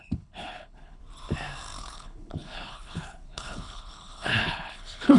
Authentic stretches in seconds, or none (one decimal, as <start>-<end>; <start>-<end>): 1.0-1.8